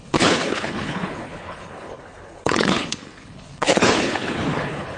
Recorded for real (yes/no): no